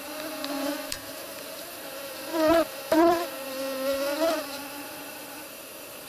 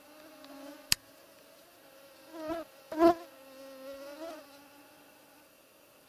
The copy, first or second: first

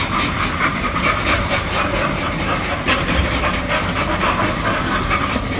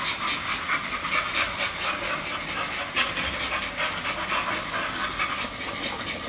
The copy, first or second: first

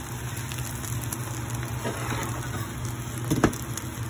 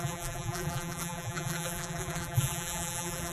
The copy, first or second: second